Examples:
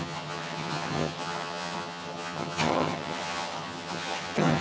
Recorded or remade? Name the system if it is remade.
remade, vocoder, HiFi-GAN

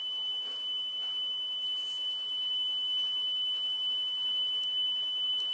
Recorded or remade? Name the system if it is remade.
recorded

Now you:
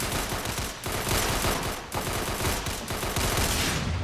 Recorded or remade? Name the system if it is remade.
recorded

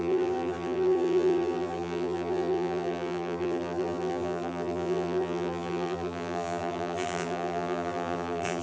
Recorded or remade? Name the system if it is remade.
remade, vocoder, BigVGAN v2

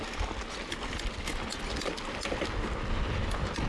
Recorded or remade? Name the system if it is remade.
recorded